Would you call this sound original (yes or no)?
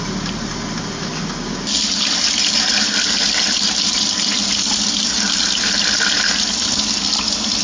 yes